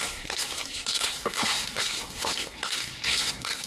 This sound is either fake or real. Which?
fake